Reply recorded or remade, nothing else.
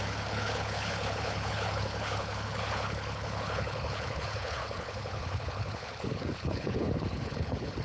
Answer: remade